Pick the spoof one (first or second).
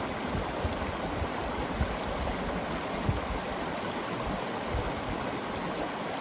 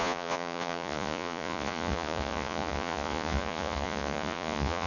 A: second